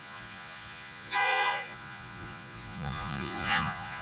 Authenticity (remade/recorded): remade